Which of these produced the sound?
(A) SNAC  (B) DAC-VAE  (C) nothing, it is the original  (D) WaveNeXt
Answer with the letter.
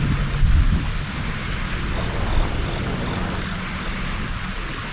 C